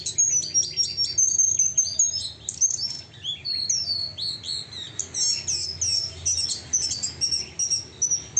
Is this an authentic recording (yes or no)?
yes